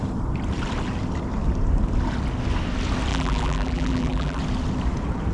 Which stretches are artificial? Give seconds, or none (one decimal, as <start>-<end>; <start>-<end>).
3.1-4.4